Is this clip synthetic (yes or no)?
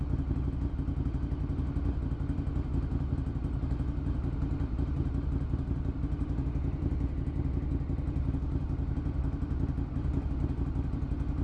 no